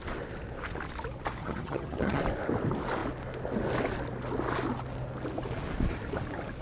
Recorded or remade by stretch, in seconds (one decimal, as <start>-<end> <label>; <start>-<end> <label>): 0.0-1.4 recorded; 1.4-2.2 remade; 2.2-6.6 recorded